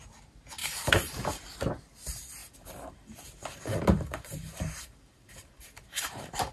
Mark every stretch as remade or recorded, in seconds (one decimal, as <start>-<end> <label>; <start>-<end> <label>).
0.0-0.6 recorded; 0.6-1.5 remade; 1.5-2.4 recorded; 2.4-6.5 remade